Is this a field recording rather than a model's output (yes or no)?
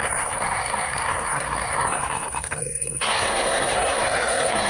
no